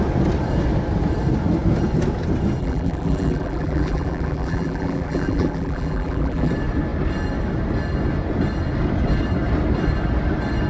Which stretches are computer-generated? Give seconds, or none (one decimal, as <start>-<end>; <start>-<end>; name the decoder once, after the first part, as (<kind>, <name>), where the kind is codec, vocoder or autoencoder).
2.6-6.5 (vocoder, BigVGAN v2)